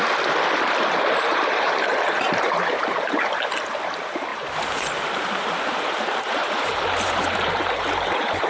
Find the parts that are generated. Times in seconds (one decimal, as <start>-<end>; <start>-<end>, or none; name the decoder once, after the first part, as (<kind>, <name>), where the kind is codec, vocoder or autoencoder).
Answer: 1.3-3.4 (vocoder, BigVGAN v2); 4.3-8.5